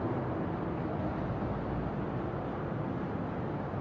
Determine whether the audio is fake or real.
real